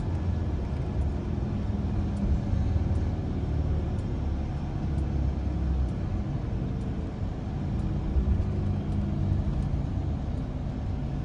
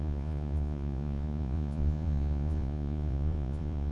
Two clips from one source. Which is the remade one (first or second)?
second